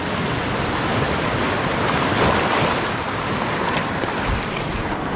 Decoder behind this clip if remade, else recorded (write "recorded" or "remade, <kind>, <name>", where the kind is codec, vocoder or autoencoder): recorded